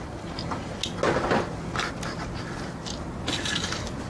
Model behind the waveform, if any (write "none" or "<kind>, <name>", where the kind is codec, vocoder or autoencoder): none